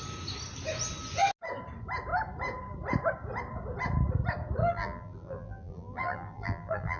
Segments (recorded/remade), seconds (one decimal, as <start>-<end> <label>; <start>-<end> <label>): 0.0-4.6 recorded; 4.6-7.0 remade